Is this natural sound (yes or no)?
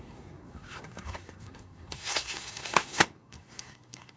no